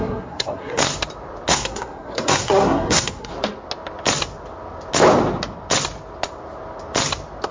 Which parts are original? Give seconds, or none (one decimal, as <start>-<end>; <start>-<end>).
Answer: 0.8-1.5; 3.3-7.5